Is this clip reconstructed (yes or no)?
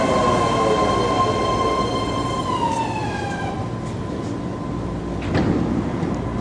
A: no